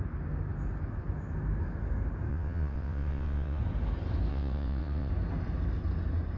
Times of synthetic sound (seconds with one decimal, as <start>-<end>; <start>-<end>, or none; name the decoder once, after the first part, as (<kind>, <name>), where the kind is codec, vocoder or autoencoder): 2.3-3.6 (vocoder, WaveNeXt); 4.3-5.1